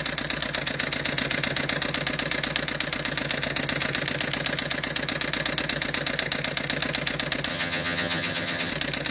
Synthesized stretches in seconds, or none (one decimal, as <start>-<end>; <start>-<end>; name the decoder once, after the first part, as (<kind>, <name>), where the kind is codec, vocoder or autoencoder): 7.5-8.7 (vocoder, HiFi-GAN)